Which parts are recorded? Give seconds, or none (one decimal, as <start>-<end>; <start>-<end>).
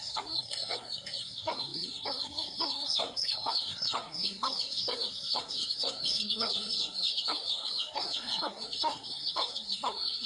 none